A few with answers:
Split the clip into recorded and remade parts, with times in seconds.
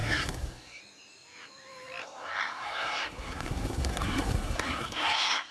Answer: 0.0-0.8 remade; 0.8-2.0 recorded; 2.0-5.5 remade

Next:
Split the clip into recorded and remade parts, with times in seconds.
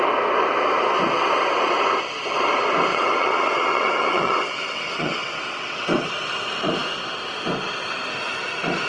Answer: 0.0-2.9 recorded; 2.9-6.1 remade; 6.1-8.9 recorded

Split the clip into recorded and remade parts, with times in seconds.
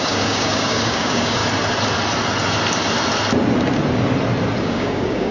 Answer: 0.0-1.4 remade; 1.4-4.6 recorded; 4.6-5.3 remade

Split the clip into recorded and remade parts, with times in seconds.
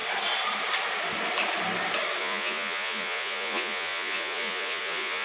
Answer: 0.0-2.2 recorded; 2.2-5.2 remade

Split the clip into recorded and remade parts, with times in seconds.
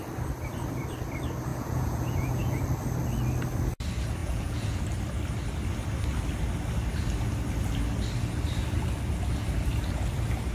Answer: 0.0-1.5 recorded; 1.5-2.6 remade; 2.6-4.2 recorded; 4.2-4.8 remade; 4.8-10.5 recorded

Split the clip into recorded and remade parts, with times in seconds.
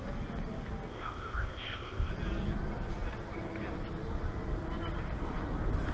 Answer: 0.0-0.9 recorded; 0.9-2.1 remade; 2.1-5.9 recorded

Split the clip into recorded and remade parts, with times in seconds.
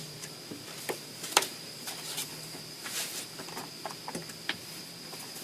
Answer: 0.0-5.4 remade